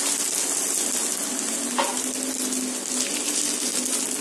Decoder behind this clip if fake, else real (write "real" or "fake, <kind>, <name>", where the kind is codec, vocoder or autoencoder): real